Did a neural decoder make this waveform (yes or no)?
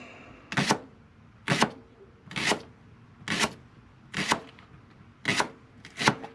no